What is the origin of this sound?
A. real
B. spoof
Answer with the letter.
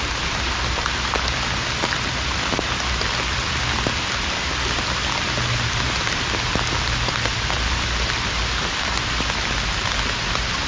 A